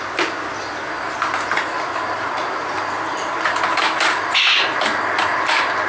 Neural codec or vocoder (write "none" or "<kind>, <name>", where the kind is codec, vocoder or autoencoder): none